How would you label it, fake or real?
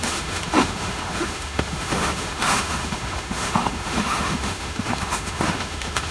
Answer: fake